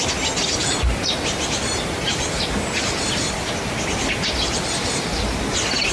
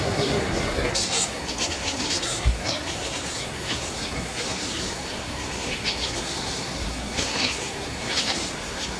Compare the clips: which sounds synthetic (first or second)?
second